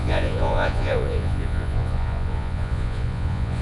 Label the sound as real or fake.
fake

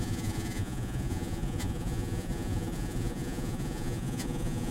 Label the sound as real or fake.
fake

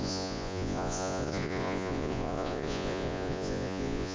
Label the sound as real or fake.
fake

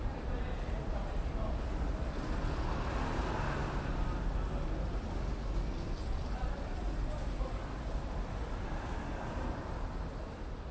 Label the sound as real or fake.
real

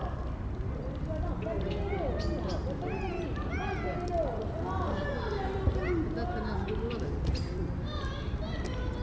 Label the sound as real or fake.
real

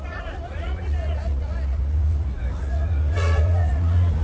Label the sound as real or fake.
fake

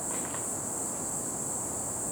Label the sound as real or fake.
real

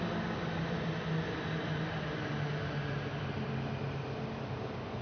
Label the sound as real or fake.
real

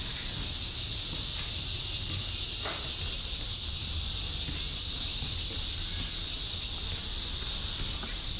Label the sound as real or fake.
real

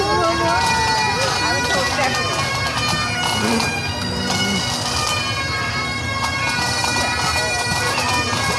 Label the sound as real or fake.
real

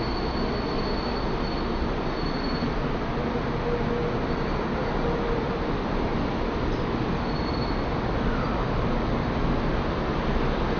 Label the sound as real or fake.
real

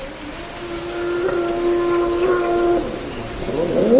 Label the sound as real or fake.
real